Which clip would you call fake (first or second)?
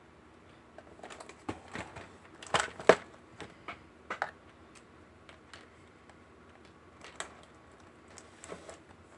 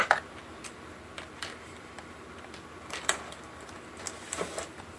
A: second